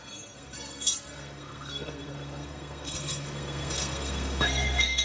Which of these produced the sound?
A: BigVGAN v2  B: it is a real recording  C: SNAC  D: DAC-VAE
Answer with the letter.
C